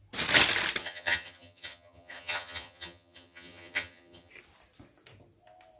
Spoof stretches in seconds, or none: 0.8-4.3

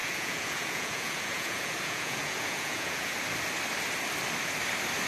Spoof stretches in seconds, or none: 0.0-3.1